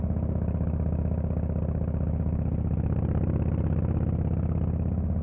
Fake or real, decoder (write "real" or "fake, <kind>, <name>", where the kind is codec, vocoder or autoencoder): real